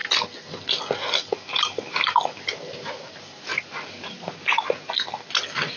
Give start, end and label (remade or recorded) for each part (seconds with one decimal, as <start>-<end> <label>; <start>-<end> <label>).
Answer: 0.0-5.8 recorded